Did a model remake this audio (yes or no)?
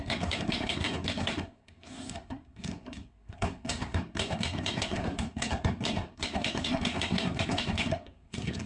yes